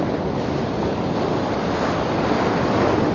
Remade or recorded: recorded